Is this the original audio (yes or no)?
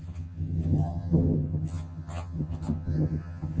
no